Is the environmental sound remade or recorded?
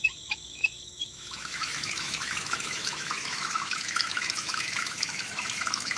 remade